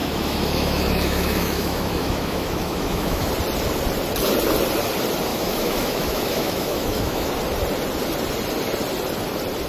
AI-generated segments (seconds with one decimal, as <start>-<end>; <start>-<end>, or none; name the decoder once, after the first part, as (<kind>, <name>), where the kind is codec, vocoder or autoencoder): 0.0-3.3 (autoencoder, DAC-VAE); 5.3-7.3